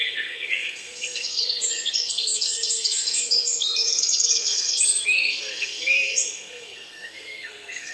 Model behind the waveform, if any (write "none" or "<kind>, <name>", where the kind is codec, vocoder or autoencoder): codec, SNAC